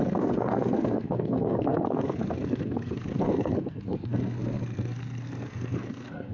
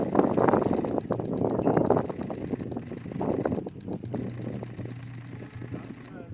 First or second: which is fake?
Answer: first